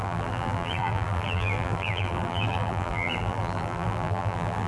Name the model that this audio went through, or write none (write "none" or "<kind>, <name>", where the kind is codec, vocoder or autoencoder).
vocoder, BigVGAN v2